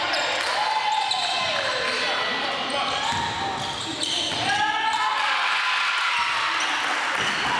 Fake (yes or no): no